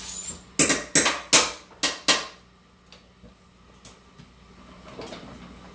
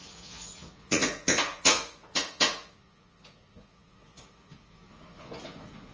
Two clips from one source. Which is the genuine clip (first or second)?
first